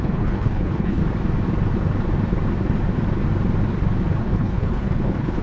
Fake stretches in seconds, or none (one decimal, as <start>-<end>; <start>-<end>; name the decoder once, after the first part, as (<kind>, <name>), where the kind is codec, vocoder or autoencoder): 0.0-1.0 (codec, HILCodec); 4.2-5.4